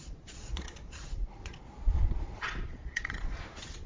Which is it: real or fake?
fake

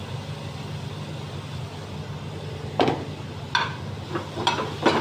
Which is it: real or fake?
real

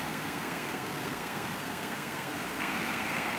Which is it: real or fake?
fake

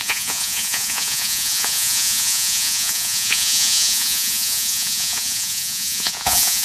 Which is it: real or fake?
fake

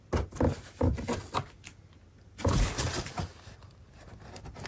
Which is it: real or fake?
real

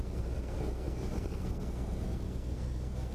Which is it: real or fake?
fake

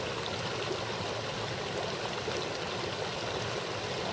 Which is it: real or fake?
real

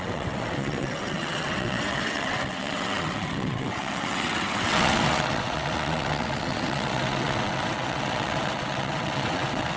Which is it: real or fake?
fake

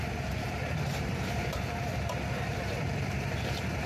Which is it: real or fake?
fake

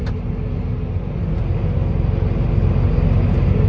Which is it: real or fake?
real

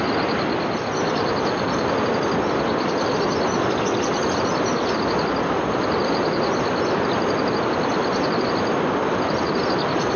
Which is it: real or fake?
real